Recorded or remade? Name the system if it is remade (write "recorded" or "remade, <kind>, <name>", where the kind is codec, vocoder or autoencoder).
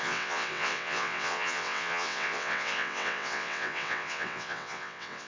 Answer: remade, vocoder, WaveNeXt